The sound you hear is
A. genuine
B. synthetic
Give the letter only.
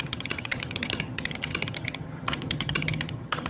B